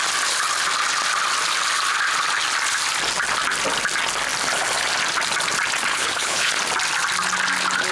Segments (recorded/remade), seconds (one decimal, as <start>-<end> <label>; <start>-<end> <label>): 0.0-5.9 recorded; 5.9-6.5 remade; 6.5-7.9 recorded

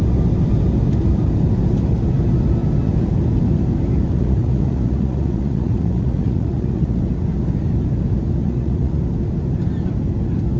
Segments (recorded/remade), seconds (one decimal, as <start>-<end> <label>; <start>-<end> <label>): 0.0-4.1 recorded; 4.1-7.0 remade; 7.0-8.4 recorded; 8.4-9.0 remade; 9.0-10.6 recorded

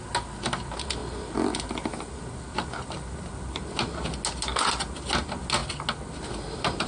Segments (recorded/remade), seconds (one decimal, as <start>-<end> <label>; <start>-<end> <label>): 0.0-6.9 recorded